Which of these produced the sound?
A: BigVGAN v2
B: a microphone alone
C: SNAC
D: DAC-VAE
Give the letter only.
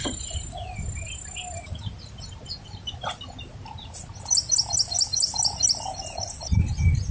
B